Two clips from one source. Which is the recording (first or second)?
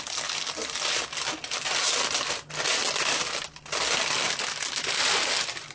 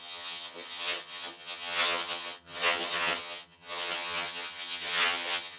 first